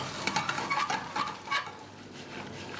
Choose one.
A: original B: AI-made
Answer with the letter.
A